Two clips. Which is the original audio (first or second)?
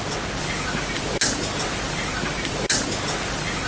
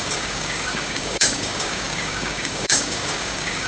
first